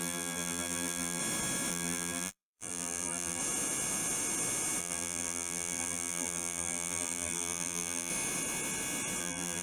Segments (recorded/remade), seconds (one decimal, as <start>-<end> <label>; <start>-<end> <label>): 0.0-1.2 remade; 1.2-1.7 recorded; 1.7-3.4 remade; 3.4-4.8 recorded; 4.8-8.1 remade; 8.1-9.2 recorded; 9.2-9.6 remade